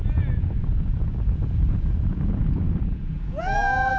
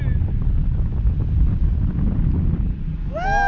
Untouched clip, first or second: second